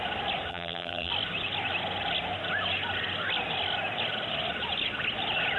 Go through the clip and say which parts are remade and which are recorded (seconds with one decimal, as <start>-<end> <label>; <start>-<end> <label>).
0.0-0.5 recorded; 0.5-1.1 remade; 1.1-5.6 recorded

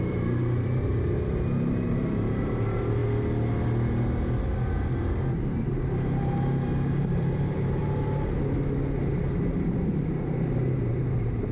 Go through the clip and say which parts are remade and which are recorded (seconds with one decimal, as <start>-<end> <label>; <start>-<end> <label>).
0.0-3.0 remade; 3.0-7.0 recorded; 7.0-7.8 remade; 7.8-9.8 recorded; 9.8-11.5 remade